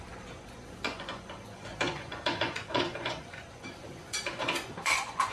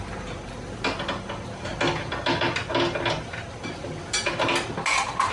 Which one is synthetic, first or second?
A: first